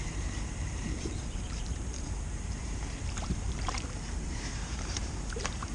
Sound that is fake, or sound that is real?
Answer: fake